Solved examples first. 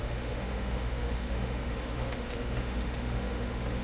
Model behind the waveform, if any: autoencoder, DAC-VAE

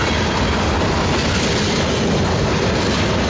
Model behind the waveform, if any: none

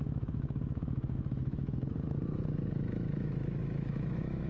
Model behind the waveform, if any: autoencoder, DAC-VAE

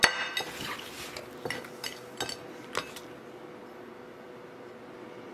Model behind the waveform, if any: none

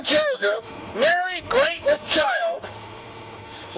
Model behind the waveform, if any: autoencoder, DAC-VAE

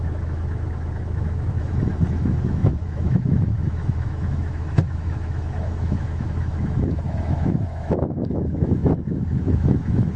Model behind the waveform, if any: autoencoder, DAC-VAE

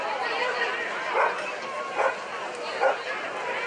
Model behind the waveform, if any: none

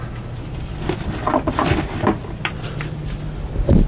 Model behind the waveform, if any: none